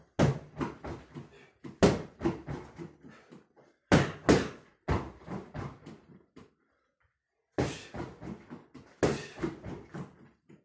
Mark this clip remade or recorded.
recorded